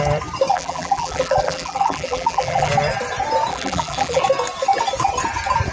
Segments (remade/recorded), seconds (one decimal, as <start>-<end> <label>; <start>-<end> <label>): 0.0-0.5 recorded; 0.5-2.7 remade; 2.7-3.5 recorded; 3.5-4.2 remade; 4.2-5.7 recorded